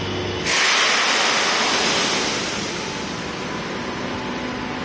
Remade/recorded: recorded